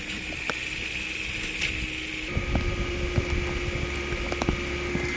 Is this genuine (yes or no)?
yes